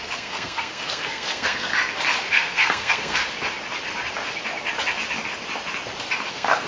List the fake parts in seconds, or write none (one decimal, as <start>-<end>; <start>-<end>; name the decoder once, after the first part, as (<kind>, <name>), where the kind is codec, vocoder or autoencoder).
0.0-1.7 (codec, SNAC); 2.3-3.2; 6.3-6.7